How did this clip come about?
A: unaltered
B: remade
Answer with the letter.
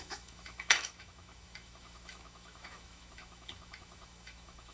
B